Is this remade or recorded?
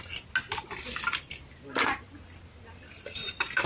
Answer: recorded